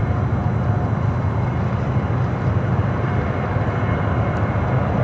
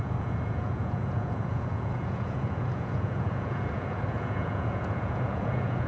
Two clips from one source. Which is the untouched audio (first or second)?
first